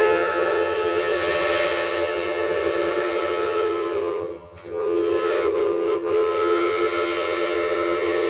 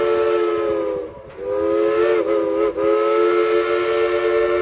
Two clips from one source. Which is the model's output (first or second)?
first